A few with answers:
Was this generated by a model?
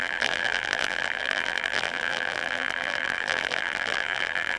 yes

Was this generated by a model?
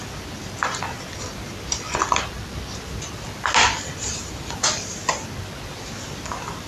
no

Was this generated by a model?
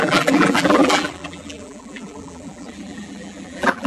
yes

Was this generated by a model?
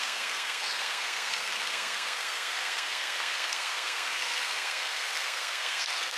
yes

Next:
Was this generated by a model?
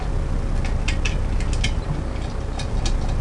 no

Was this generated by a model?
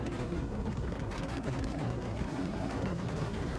yes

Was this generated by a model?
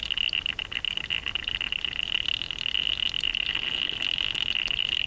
no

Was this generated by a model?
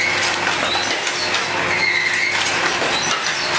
no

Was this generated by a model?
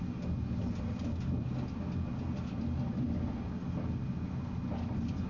no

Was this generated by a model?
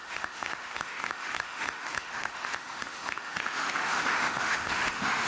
yes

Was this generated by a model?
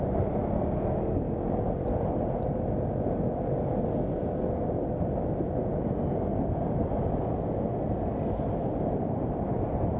no